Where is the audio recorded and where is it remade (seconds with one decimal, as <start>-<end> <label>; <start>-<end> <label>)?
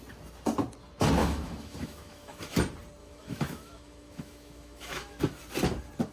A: 0.0-1.2 recorded; 1.2-2.6 remade; 2.6-3.0 recorded; 3.0-5.2 remade; 5.2-6.1 recorded